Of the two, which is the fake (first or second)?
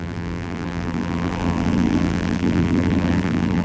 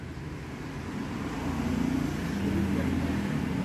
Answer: first